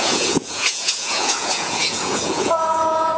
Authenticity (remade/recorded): remade